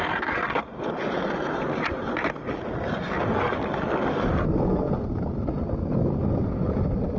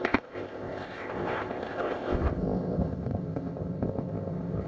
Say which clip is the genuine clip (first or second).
first